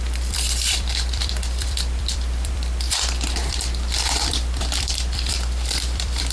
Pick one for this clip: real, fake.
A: fake